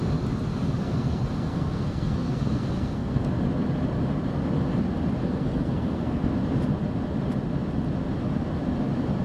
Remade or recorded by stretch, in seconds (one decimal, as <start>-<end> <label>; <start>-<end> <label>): 0.0-0.5 recorded; 0.5-3.3 remade; 3.3-5.2 recorded; 5.2-6.3 remade; 6.3-9.2 recorded